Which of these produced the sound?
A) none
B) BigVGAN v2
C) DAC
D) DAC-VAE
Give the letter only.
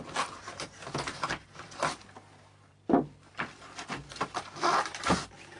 B